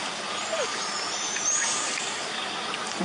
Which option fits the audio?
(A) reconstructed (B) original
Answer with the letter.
B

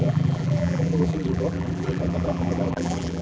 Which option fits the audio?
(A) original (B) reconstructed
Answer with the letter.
B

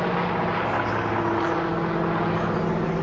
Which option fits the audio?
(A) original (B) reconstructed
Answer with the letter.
A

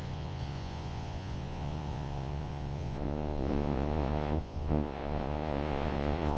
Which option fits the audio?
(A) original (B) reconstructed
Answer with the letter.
B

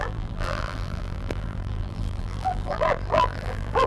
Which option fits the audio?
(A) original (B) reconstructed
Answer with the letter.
B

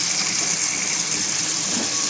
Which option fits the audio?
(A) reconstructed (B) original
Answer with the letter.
B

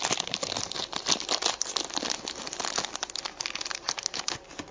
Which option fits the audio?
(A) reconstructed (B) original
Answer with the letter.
B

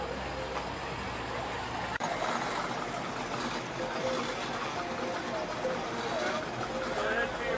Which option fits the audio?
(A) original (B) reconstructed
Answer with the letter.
A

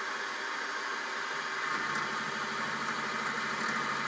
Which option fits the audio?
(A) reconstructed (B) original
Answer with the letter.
B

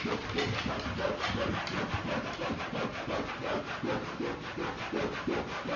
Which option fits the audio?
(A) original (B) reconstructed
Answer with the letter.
A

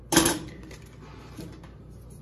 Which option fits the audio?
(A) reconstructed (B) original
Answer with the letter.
B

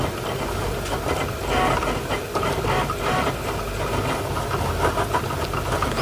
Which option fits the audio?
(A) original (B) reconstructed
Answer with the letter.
A